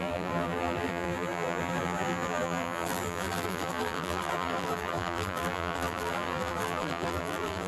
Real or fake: fake